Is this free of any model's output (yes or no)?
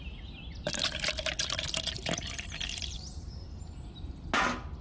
yes